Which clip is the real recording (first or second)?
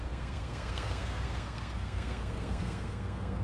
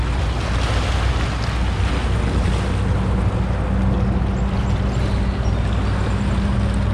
second